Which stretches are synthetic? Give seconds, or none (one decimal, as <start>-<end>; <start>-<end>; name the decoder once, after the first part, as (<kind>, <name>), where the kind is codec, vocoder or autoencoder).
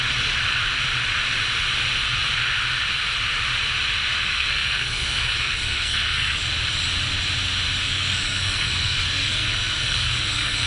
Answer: 4.1-6.4 (codec, SNAC); 7.8-10.7